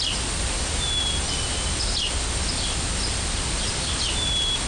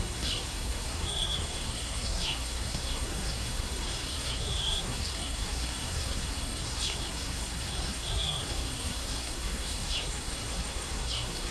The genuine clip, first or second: first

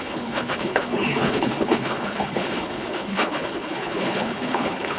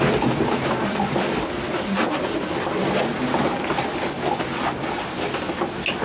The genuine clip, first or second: second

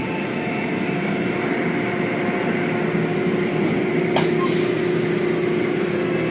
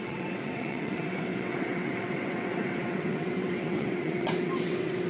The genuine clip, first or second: first